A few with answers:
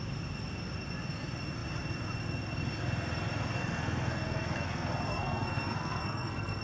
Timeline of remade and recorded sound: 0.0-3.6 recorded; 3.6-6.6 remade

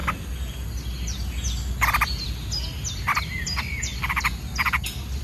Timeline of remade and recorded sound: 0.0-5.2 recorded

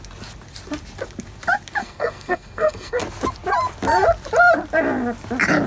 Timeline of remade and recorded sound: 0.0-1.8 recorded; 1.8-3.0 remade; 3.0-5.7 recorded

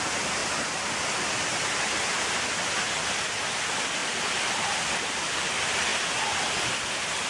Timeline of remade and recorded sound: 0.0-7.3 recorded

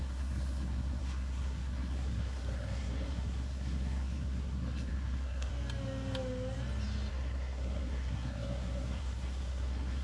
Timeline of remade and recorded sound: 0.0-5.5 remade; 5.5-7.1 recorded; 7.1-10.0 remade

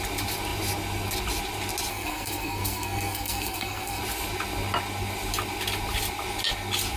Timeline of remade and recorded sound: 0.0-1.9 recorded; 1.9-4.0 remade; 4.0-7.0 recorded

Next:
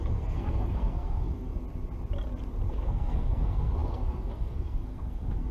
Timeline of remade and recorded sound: 0.0-1.5 remade; 1.5-2.7 recorded; 2.7-5.5 remade